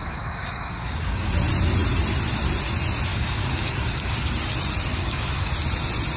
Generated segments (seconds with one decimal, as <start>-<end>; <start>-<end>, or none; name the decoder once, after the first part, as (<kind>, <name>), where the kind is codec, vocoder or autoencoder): 0.0-1.3 (codec, DAC); 3.1-4.3; 4.9-5.5